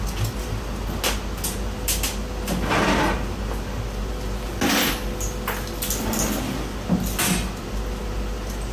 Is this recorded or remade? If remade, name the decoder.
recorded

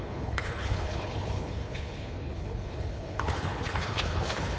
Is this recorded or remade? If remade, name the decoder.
remade, codec, HILCodec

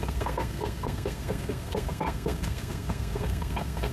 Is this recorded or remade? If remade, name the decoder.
remade, codec, SNAC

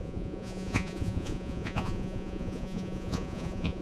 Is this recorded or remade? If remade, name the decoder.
remade, vocoder, Vocos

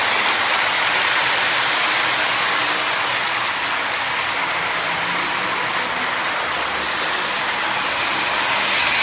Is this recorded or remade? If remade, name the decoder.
recorded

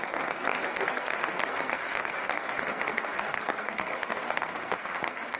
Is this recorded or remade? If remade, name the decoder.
remade, codec, SNAC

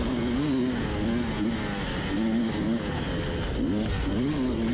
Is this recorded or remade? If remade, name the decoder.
recorded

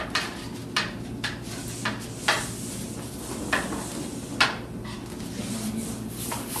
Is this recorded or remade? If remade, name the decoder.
recorded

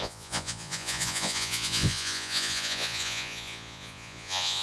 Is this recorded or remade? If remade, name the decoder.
remade, vocoder, Vocos